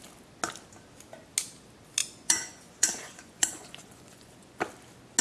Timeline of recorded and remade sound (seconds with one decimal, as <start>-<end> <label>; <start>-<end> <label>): 0.0-2.0 recorded; 2.0-4.6 remade; 4.6-5.2 recorded